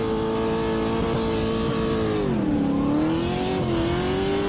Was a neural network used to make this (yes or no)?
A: no